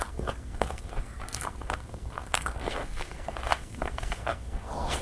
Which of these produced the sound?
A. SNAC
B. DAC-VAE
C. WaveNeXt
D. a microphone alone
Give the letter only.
A